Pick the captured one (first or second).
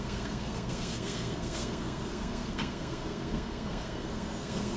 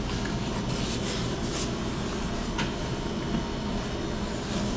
second